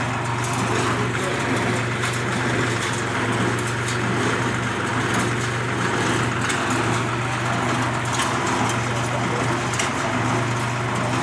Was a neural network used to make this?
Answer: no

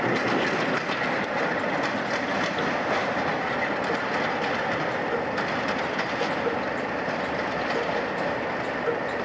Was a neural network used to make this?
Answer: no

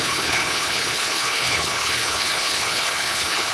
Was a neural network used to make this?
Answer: yes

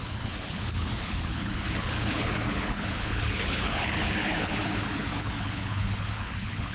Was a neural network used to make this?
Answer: yes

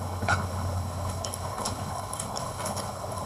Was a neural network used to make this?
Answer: yes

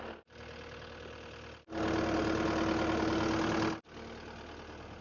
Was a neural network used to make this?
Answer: no